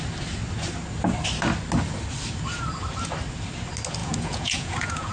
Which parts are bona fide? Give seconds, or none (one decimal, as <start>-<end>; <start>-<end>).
0.0-4.0